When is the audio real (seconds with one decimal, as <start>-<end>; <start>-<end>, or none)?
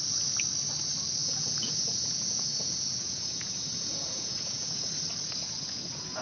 0.0-1.2; 4.9-5.4